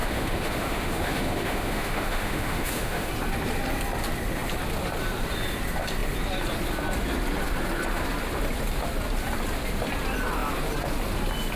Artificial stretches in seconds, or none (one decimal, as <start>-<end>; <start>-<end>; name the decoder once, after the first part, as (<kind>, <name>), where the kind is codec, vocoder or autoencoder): 0.0-3.1 (autoencoder, DAC-VAE)